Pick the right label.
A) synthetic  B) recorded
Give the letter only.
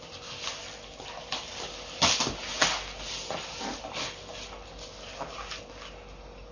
B